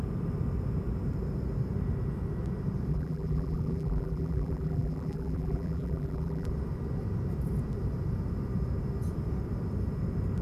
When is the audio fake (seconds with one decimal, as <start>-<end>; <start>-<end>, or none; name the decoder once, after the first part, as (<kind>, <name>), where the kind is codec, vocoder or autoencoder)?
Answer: 2.9-6.5 (vocoder, BigVGAN v2)

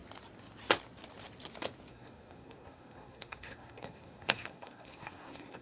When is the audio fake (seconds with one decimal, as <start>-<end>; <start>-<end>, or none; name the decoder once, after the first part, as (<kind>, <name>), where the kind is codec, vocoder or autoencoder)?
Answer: 1.9-5.6 (codec, SNAC)

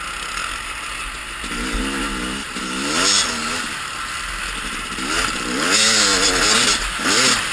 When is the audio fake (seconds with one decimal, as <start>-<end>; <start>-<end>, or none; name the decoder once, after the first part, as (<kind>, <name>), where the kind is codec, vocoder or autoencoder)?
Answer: none

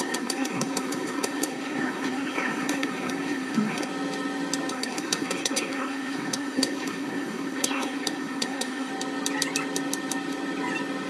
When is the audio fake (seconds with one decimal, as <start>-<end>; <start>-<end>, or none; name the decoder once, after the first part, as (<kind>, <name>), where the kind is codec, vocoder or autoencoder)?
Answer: 0.0-3.9 (codec, SNAC); 4.7-8.9

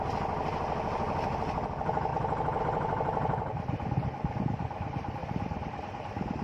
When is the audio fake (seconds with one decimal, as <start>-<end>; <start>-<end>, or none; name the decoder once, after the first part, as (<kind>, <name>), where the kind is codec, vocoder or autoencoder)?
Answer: 2.1-2.6 (vocoder, BigVGAN v2); 5.2-5.8

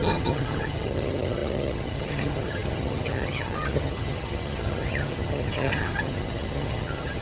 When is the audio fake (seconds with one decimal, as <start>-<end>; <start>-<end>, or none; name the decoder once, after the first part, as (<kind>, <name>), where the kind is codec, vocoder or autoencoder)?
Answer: 0.0-7.2 (vocoder, HiFi-GAN)

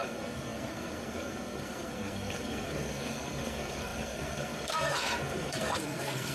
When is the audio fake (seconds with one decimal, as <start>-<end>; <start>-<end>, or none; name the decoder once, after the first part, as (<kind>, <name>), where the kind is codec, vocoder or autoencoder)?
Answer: 0.0-6.3 (codec, SNAC)